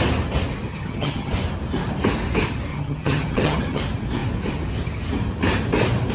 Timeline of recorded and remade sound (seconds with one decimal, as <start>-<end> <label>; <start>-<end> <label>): 0.0-0.7 recorded; 0.7-1.3 remade; 1.3-2.7 recorded; 2.7-3.8 remade; 3.8-6.1 recorded